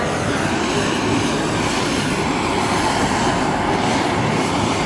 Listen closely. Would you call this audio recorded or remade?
recorded